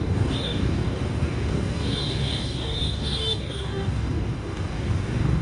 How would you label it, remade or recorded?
remade